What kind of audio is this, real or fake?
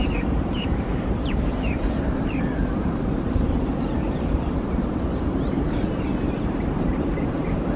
fake